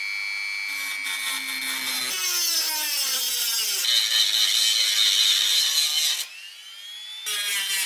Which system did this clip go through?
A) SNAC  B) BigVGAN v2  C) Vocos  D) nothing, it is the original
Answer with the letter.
D